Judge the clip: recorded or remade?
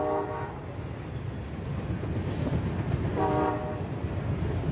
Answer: recorded